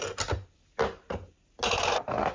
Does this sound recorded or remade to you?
recorded